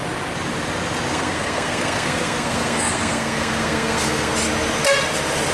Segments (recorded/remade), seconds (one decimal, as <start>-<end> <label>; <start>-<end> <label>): 0.0-1.1 recorded; 1.1-4.3 remade; 4.3-5.5 recorded